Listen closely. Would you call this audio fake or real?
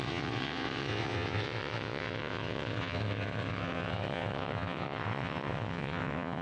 fake